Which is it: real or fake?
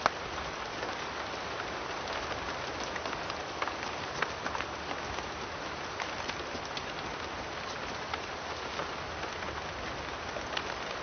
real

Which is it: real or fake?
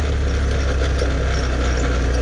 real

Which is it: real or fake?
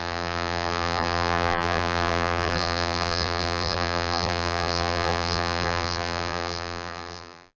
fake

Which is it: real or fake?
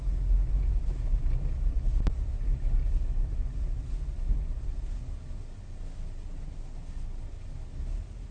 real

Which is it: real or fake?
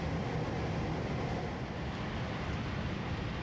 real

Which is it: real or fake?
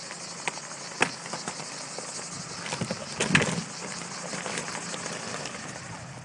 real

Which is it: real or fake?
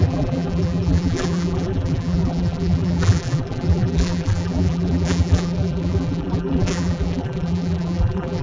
fake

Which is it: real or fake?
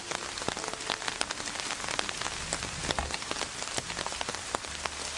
real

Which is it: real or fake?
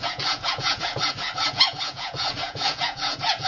fake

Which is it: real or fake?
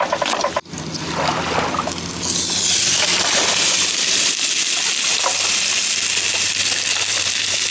real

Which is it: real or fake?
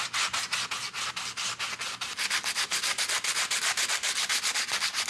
real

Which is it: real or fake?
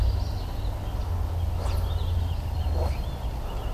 real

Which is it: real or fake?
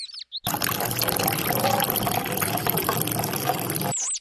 real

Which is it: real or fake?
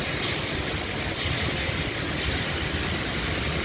real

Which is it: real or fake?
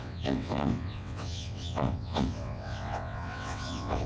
fake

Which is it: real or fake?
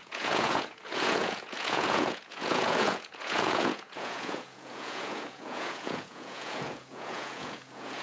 fake